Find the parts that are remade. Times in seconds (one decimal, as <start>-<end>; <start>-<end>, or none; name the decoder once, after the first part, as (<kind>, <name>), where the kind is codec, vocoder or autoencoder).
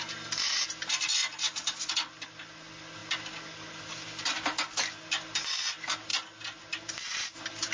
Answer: none